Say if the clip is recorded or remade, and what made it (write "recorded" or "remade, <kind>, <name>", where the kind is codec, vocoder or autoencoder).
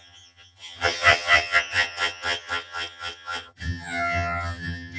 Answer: remade, vocoder, HiFi-GAN